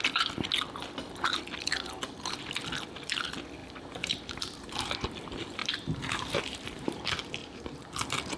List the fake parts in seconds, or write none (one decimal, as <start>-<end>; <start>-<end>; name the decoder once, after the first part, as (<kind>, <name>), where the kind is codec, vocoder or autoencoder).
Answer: 3.6-4.2 (vocoder, BigVGAN v2); 5.6-7.0; 7.4-7.9